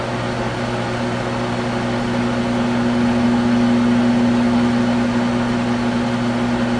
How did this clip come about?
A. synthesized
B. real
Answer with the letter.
B